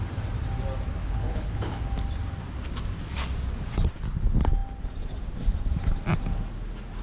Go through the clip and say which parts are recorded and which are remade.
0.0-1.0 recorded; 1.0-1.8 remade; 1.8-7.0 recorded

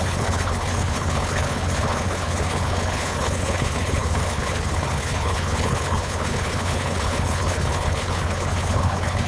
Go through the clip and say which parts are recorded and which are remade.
0.0-9.3 remade

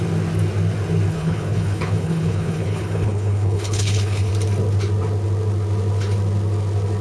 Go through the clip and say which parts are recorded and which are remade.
0.0-1.1 recorded; 1.1-4.3 remade; 4.3-7.0 recorded